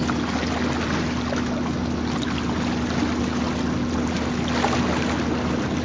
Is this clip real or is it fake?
real